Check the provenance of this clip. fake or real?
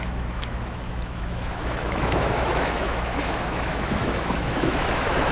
fake